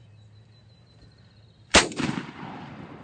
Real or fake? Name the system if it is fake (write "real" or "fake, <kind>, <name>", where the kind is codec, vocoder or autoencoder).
fake, vocoder, BigVGAN v2